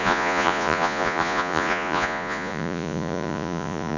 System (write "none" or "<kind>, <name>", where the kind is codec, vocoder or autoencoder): vocoder, Vocos